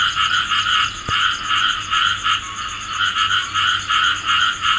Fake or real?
real